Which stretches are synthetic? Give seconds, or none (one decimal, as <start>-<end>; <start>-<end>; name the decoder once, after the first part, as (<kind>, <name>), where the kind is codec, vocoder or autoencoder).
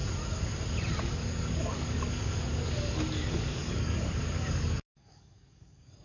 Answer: 1.0-6.0 (codec, DAC)